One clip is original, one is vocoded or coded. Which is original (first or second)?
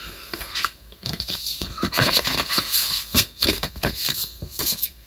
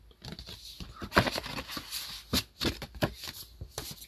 second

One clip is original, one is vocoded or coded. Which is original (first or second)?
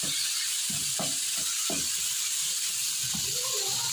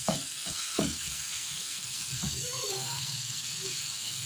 first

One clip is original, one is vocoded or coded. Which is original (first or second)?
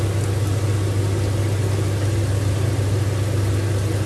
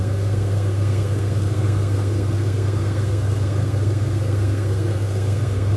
first